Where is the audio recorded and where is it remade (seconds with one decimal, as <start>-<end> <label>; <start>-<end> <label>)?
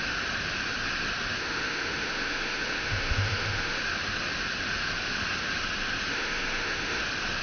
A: 0.0-1.4 recorded; 1.4-3.8 remade; 3.8-6.1 recorded; 6.1-7.0 remade; 7.0-7.4 recorded